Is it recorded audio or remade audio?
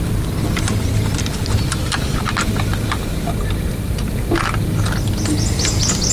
recorded